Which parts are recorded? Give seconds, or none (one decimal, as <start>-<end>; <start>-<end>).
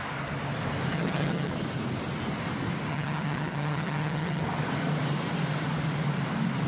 0.0-0.9; 1.5-2.9; 4.4-6.7